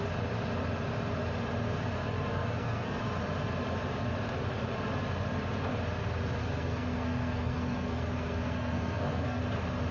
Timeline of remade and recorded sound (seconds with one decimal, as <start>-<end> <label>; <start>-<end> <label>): 0.0-2.3 recorded; 2.3-3.0 remade; 3.0-6.4 recorded; 6.4-9.4 remade; 9.4-9.9 recorded